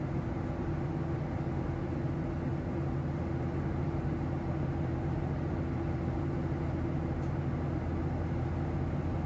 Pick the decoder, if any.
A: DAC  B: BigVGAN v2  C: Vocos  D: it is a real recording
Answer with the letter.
D